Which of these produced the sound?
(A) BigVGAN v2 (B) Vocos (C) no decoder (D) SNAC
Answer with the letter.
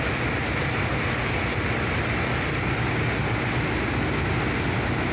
C